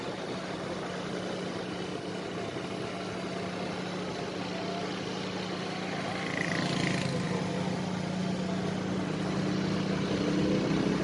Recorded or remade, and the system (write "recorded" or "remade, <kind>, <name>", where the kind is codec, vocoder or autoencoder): recorded